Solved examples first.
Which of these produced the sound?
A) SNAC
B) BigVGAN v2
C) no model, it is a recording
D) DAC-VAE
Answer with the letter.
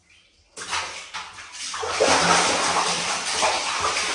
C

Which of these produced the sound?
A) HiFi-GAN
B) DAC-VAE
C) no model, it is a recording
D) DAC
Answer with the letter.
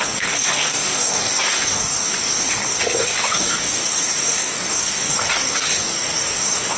D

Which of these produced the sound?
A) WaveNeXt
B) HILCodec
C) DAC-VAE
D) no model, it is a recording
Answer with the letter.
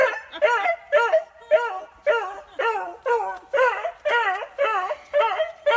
D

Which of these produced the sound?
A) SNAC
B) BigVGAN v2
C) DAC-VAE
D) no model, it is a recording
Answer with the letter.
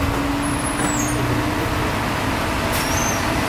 D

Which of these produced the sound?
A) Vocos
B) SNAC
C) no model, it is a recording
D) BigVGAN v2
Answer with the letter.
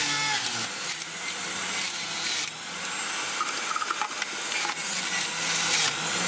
C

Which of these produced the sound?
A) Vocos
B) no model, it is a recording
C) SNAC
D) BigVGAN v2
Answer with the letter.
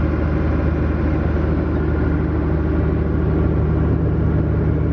B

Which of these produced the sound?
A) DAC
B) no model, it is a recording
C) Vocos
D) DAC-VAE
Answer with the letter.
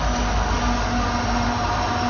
B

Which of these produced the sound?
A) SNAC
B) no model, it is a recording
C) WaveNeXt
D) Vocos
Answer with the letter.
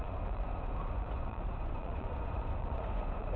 D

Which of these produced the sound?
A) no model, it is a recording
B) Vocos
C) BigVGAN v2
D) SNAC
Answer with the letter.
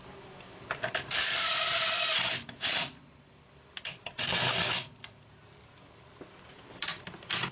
A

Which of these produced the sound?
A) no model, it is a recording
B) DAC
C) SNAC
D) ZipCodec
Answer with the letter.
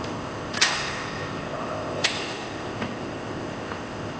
D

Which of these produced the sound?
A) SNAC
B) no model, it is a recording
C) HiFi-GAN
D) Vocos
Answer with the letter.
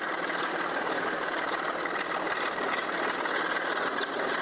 B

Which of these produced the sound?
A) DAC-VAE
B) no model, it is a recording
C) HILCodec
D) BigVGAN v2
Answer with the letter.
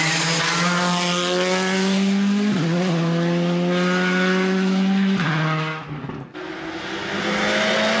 B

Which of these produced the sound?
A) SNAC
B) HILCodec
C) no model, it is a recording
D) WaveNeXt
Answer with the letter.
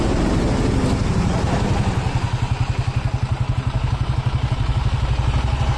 C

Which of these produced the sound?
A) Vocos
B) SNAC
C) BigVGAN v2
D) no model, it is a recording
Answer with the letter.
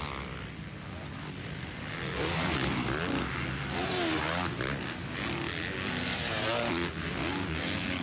D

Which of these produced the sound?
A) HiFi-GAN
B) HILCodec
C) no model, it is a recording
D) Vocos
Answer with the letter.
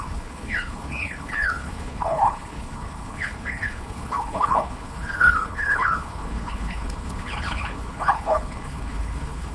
B